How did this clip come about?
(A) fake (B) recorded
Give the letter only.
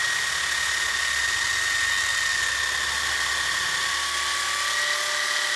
B